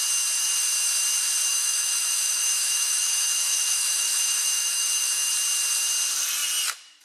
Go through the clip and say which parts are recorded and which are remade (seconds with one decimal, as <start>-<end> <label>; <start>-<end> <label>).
0.0-1.5 recorded; 1.5-5.3 remade; 5.3-7.0 recorded